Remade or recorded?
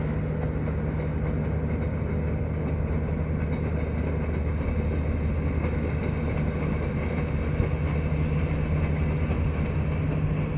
recorded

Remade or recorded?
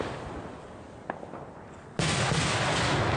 recorded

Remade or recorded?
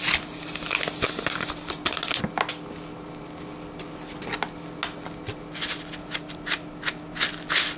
recorded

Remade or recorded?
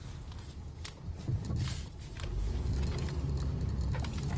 recorded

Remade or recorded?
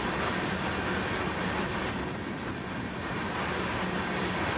recorded